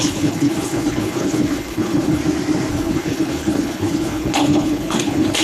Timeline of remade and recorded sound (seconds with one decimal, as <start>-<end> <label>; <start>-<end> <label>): 0.0-2.2 remade; 2.2-2.7 recorded; 2.7-5.4 remade

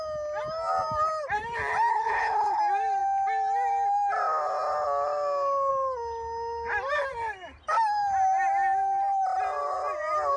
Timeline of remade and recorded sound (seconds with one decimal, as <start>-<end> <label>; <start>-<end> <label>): 0.0-1.9 recorded; 1.9-2.6 remade; 2.6-10.4 recorded